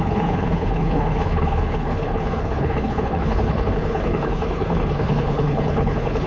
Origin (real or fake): fake